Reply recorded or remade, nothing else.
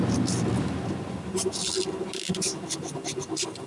recorded